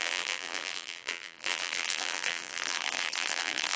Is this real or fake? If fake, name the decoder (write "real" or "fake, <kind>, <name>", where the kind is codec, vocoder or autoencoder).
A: fake, vocoder, BigVGAN v2